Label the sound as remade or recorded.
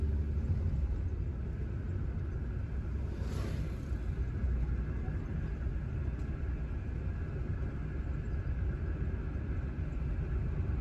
recorded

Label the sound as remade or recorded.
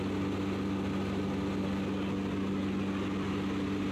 recorded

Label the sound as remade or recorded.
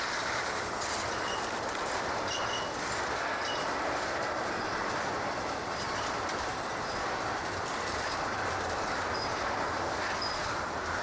remade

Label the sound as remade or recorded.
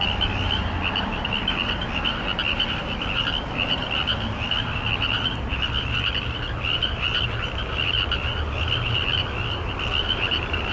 remade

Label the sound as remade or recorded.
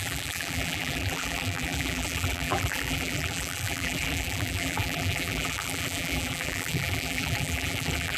remade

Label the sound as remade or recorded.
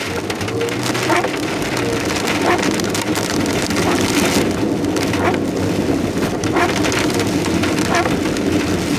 recorded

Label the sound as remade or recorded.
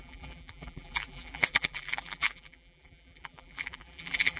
remade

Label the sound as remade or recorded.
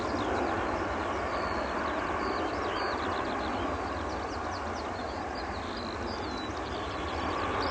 recorded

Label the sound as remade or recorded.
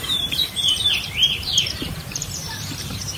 remade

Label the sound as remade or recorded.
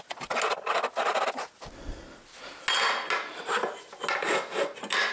recorded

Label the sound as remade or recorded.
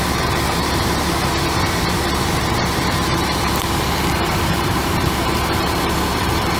remade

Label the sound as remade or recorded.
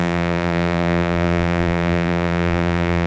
remade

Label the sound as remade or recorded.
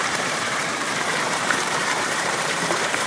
remade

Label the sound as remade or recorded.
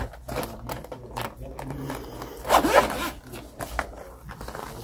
recorded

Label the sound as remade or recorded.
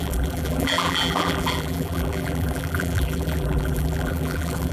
remade